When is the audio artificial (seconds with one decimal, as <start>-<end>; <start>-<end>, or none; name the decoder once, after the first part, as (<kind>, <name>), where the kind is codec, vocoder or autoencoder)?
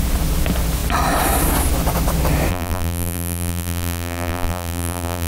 2.5-5.3 (vocoder, BigVGAN v2)